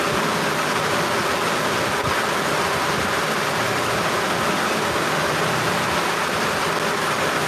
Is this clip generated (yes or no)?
no